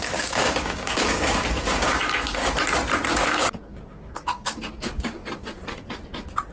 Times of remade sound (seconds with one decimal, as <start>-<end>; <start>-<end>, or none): 0.0-2.4; 3.1-5.2